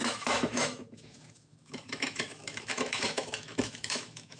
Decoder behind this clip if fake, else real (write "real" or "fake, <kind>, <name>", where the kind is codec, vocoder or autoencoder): fake, autoencoder, DAC-VAE